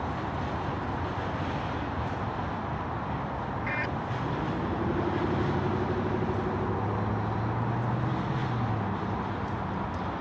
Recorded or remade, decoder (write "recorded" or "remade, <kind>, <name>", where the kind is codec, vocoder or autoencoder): recorded